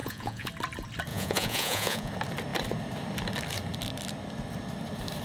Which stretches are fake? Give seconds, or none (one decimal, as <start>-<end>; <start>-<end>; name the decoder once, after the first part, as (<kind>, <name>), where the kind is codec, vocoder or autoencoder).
0.0-0.5 (vocoder, Vocos); 1.1-2.1